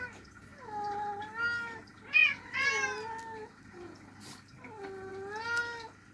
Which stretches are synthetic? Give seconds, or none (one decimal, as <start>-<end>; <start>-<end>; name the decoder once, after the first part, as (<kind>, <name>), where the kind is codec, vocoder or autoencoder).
none